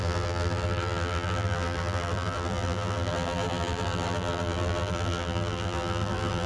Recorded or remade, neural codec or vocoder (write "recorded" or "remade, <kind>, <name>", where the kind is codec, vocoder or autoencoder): remade, vocoder, BigVGAN v2